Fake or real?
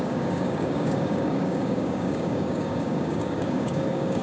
fake